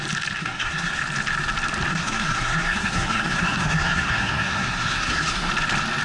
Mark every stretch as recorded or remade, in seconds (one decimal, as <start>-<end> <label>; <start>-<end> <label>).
0.0-0.4 recorded; 0.4-1.0 remade; 1.0-1.9 recorded; 1.9-5.5 remade; 5.5-6.0 recorded